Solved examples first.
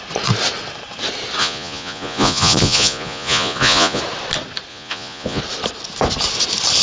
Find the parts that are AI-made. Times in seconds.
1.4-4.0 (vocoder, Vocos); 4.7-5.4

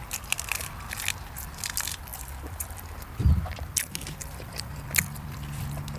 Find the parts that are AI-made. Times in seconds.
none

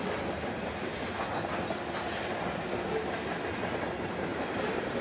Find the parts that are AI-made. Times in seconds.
4.3-5.0 (vocoder, BigVGAN v2)

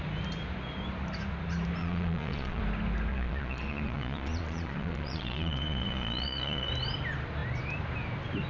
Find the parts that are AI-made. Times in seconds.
1.8-2.6 (vocoder, Vocos); 3.1-6.7

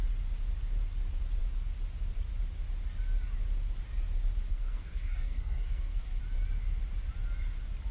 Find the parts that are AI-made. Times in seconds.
4.5-6.2 (codec, SNAC)

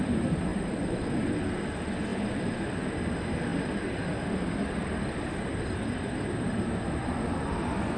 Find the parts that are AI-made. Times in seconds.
0.5-1.1 (vocoder, BigVGAN v2); 2.1-2.9

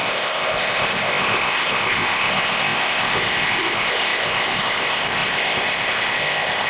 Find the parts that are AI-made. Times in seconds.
0.0-6.7 (codec, ZipCodec)

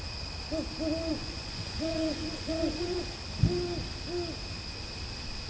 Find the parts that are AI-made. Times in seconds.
1.1-3.0 (vocoder, Vocos)